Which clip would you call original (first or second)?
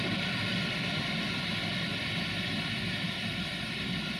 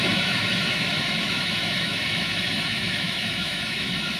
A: first